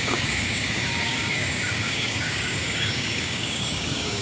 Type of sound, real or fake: fake